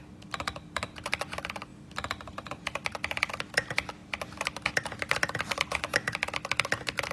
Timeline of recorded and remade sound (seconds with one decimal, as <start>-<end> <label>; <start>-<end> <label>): 0.0-7.1 recorded